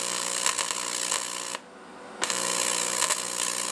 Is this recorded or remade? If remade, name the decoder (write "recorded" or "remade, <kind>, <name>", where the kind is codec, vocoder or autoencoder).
recorded